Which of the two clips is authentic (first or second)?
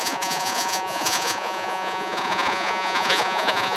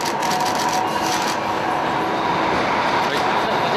second